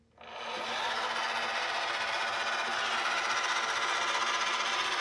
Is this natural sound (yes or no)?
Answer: yes